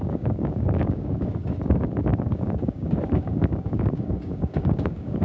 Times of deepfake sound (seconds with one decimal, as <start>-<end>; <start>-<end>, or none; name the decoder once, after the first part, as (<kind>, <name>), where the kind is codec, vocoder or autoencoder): 0.0-5.2 (codec, DAC)